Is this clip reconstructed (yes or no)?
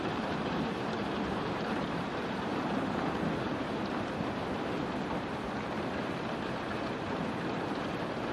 yes